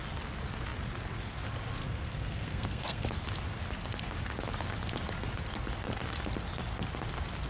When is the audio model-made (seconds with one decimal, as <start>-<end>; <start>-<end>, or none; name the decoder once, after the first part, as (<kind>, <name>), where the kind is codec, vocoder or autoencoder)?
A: 1.8-3.1 (codec, SNAC)